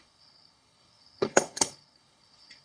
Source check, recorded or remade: remade